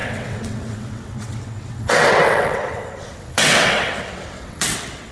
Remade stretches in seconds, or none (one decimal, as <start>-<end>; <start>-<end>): 0.0-5.1